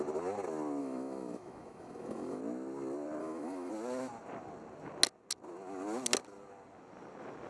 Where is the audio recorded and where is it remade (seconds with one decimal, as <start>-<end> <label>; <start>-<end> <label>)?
0.0-0.8 recorded; 0.8-2.4 remade; 2.4-3.2 recorded; 3.2-3.7 remade; 3.7-7.5 recorded